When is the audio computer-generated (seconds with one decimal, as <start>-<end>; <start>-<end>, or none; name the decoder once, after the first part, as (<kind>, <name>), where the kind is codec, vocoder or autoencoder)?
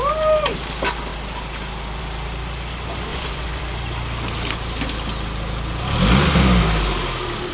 3.1-3.6 (vocoder, Vocos)